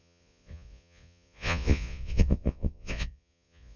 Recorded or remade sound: remade